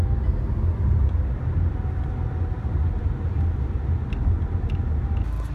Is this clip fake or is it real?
real